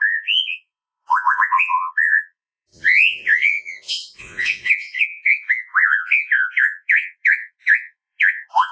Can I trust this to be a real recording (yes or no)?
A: no